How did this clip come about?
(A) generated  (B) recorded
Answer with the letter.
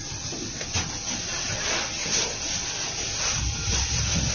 B